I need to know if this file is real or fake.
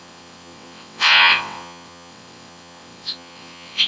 fake